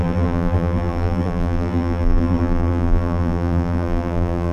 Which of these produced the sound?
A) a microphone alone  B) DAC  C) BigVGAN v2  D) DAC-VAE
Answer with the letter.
C